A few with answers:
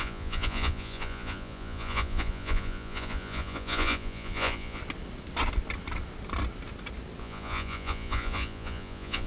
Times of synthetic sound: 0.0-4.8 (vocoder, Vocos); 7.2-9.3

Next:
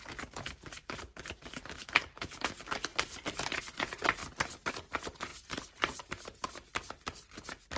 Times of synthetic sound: 1.1-2.4 (vocoder, BigVGAN v2); 2.9-3.6; 5.3-6.1

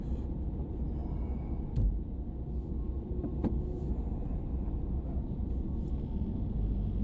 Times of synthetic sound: none

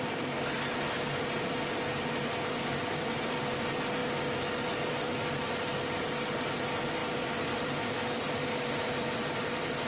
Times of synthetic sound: 7.0-9.9 (vocoder, BigVGAN v2)

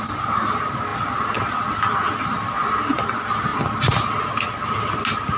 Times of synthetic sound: none